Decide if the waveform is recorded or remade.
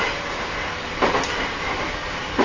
recorded